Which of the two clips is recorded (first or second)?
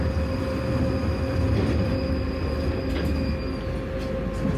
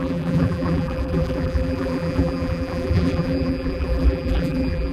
first